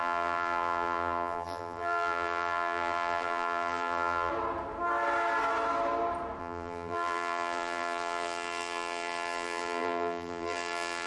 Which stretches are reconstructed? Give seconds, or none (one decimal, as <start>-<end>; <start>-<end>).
0.0-4.3; 6.4-11.1